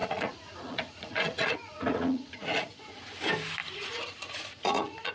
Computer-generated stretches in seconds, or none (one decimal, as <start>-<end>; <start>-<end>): 0.0-3.1; 3.6-5.1